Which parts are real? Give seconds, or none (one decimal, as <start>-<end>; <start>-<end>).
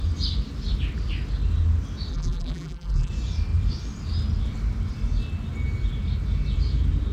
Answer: 0.0-2.1; 3.1-7.1